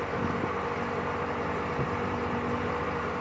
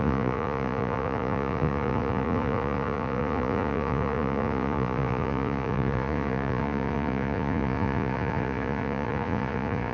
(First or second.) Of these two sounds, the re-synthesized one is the second